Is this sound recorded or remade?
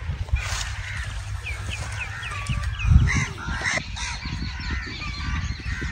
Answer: recorded